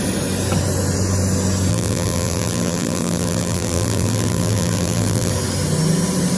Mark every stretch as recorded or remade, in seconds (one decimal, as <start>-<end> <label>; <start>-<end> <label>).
0.0-1.7 recorded; 1.7-5.3 remade; 5.3-6.4 recorded